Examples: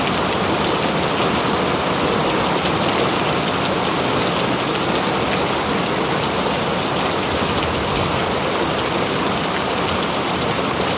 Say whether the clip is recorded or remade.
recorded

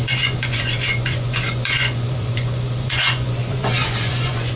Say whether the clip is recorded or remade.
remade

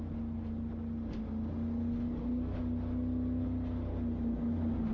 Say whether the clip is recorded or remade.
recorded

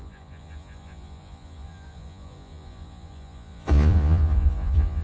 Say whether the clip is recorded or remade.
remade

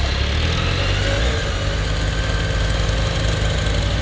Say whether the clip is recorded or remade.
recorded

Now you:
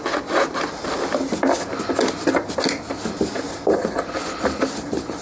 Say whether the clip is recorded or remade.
recorded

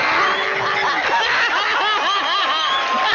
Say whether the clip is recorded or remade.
recorded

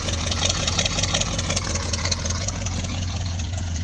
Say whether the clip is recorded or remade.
remade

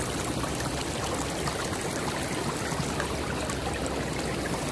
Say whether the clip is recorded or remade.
recorded